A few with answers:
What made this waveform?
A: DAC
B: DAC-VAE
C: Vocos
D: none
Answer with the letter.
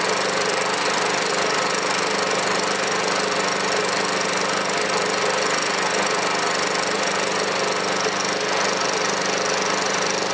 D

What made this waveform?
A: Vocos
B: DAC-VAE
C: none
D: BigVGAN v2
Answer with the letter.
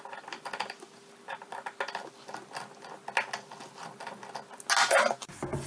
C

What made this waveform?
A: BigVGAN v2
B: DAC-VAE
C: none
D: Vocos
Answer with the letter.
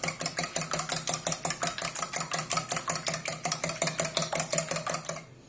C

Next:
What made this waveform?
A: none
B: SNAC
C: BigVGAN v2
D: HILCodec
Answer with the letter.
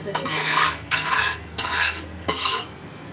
B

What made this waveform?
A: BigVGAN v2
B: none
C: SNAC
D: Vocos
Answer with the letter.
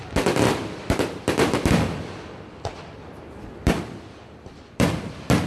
A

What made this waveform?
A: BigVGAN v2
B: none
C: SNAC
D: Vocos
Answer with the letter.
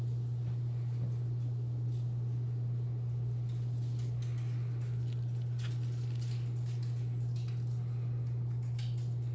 B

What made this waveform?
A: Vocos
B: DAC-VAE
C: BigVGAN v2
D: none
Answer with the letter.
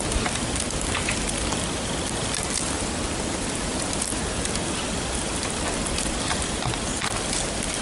D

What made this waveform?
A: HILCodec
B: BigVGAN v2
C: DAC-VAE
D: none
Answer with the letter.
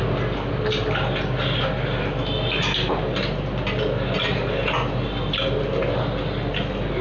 D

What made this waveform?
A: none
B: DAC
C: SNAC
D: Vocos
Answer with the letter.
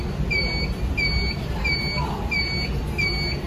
A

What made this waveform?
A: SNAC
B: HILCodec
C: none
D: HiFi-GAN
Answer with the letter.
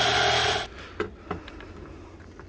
C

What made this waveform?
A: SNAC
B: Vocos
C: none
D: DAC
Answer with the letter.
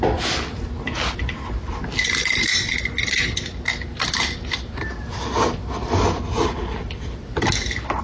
C